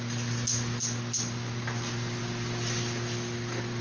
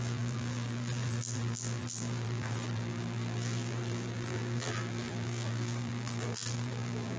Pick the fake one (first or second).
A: second